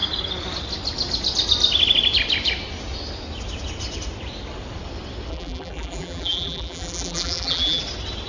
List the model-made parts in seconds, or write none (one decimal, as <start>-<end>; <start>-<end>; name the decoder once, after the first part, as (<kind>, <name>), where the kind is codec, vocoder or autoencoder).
5.3-7.8 (vocoder, BigVGAN v2)